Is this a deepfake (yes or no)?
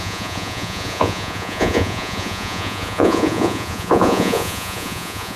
yes